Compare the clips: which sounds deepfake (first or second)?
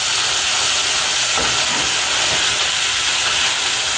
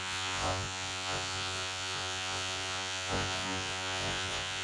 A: second